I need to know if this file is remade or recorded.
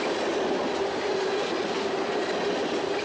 recorded